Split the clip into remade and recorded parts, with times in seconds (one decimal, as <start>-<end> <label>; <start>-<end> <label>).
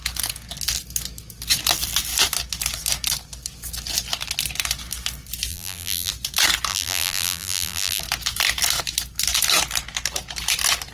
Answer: 0.0-5.5 recorded; 5.5-6.1 remade; 6.1-6.7 recorded; 6.7-8.0 remade; 8.0-10.9 recorded